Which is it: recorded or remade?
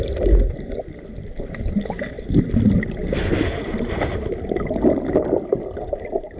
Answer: recorded